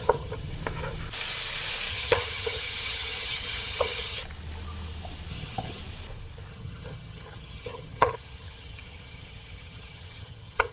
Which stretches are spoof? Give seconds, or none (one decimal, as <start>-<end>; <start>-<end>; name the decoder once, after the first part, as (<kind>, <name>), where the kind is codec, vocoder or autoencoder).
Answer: 0.0-0.5 (vocoder, HiFi-GAN); 1.9-4.2; 5.3-5.8; 6.5-10.7